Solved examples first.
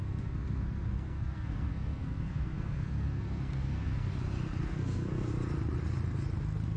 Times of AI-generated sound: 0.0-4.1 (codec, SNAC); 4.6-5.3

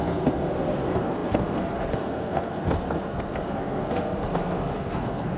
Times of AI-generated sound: 0.0-5.4 (codec, SNAC)

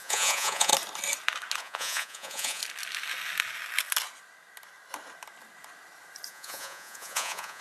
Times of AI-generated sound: 0.0-0.7 (vocoder, Vocos); 1.6-2.6; 6.3-7.6

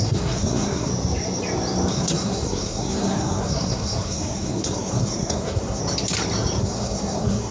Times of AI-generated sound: 0.0-0.9 (codec, SNAC); 1.9-5.8; 6.6-7.5

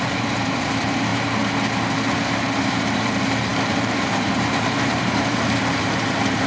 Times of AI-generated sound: 0.0-1.1 (vocoder, BigVGAN v2); 2.6-6.5

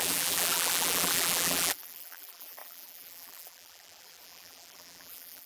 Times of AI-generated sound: 0.0-5.5 (vocoder, BigVGAN v2)

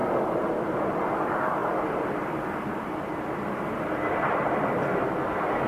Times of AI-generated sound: 0.0-0.9 (vocoder, BigVGAN v2); 1.6-5.0

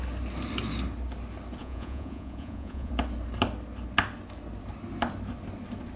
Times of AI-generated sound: 1.6-2.9 (vocoder, Vocos)